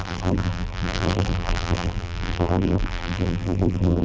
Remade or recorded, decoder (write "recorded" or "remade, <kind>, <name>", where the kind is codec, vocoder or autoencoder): remade, vocoder, BigVGAN v2